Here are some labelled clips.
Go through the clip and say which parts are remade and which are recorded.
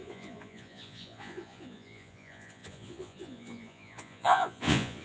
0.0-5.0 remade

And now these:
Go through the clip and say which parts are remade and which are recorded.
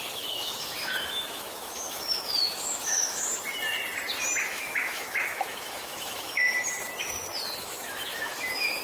0.0-3.3 remade; 3.3-4.4 recorded; 4.4-6.4 remade; 6.4-7.6 recorded; 7.6-8.8 remade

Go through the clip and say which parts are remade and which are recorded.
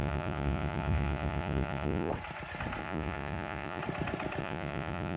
0.0-2.1 remade; 2.1-2.8 recorded; 2.8-3.8 remade; 3.8-4.4 recorded; 4.4-5.2 remade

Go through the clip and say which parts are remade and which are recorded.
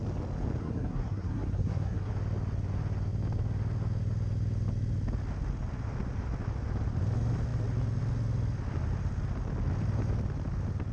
0.0-0.6 recorded; 0.6-2.1 remade; 2.1-10.9 recorded